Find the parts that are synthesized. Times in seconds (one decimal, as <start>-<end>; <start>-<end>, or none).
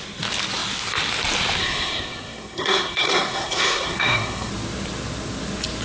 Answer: 1.6-4.5